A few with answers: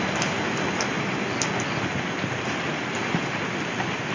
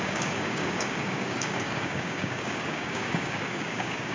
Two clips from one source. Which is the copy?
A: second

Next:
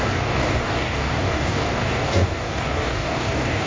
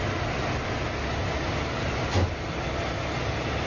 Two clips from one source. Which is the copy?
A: first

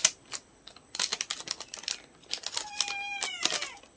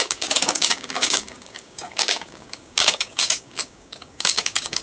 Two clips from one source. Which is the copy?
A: second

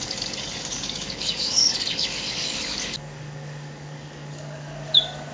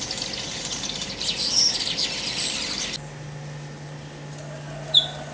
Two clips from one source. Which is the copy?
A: first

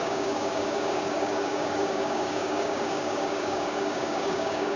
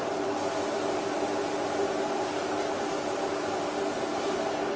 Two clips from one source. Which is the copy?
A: first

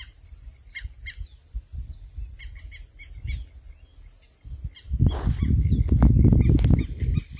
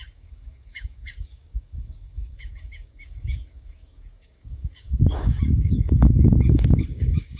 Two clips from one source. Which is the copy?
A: second